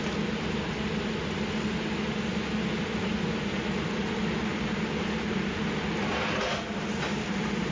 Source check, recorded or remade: recorded